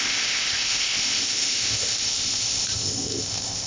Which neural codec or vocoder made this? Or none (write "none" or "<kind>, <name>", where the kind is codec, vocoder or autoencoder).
codec, ZipCodec